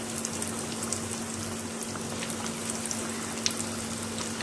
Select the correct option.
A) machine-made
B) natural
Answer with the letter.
B